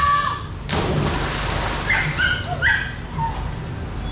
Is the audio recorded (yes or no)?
yes